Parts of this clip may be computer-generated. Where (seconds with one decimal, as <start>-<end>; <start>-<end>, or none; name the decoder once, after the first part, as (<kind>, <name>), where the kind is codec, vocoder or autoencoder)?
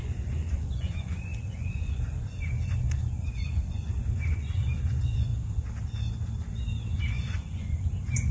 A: 0.0-5.3 (vocoder, Vocos); 6.9-8.3